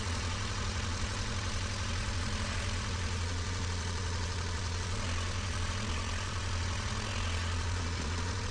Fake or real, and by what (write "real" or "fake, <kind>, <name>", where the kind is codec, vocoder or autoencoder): fake, vocoder, Vocos